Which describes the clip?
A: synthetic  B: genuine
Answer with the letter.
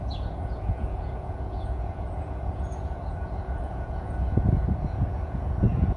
A